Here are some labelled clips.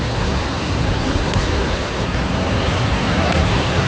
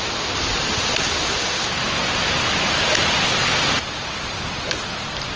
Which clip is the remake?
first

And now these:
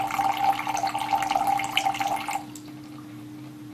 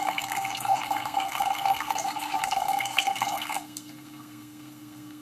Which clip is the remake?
second